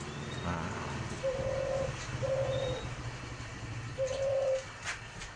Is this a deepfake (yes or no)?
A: no